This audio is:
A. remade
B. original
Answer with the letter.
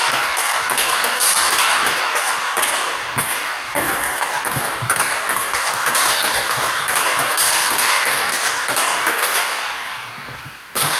A